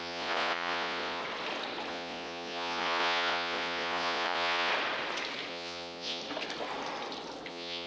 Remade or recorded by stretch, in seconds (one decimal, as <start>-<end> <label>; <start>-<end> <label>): 0.0-1.2 remade; 1.2-1.9 recorded; 1.9-4.7 remade; 4.7-5.5 recorded; 5.5-6.2 remade; 6.2-7.5 recorded; 7.5-7.9 remade